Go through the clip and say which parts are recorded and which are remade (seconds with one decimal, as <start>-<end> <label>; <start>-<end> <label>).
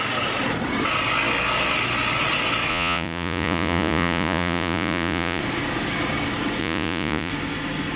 0.0-2.7 recorded; 2.7-5.4 remade; 5.4-6.6 recorded; 6.6-7.3 remade; 7.3-8.0 recorded